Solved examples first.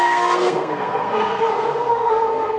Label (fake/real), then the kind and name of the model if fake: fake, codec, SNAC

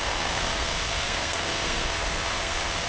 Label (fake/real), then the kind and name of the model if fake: fake, codec, SNAC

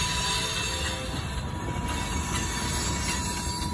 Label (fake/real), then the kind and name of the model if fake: real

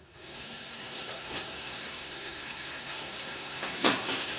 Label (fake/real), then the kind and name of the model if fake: fake, codec, SNAC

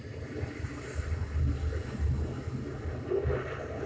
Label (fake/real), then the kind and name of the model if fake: real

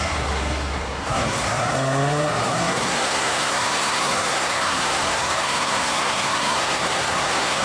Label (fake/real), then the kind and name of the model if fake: fake, codec, SNAC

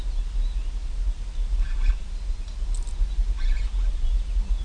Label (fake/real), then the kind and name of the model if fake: real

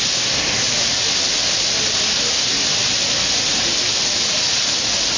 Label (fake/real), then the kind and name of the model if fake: real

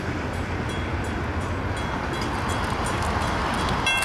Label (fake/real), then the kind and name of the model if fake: real